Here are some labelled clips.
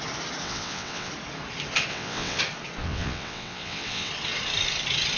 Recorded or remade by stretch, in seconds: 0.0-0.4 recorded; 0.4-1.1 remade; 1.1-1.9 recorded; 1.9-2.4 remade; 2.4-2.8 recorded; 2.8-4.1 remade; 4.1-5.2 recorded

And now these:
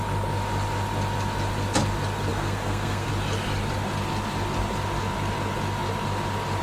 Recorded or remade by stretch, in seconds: 0.0-2.3 recorded; 2.3-3.1 remade; 3.1-6.6 recorded